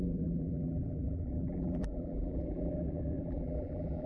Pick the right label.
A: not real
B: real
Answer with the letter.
A